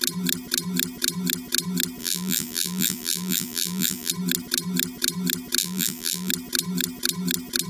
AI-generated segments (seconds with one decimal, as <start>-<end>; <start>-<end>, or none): 2.0-4.1; 5.6-6.3